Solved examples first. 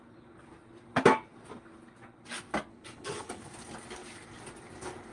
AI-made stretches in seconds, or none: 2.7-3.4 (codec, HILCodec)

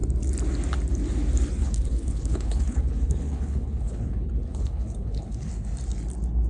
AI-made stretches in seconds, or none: 1.6-5.5 (codec, HILCodec)

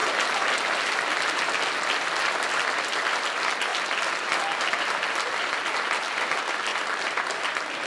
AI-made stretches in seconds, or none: none

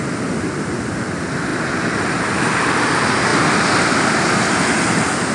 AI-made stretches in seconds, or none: none

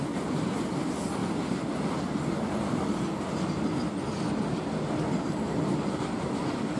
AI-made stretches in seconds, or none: none

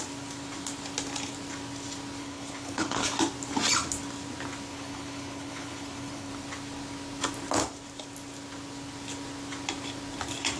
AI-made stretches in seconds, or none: 2.2-3.0 (codec, HILCodec); 4.7-6.3

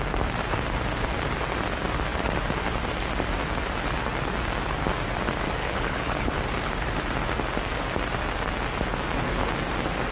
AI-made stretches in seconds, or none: 5.6-6.4 (codec, HILCodec)

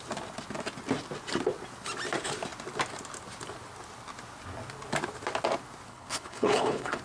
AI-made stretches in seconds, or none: 5.9-7.0 (codec, HILCodec)